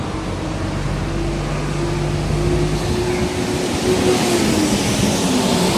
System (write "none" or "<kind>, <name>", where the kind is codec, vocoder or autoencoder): none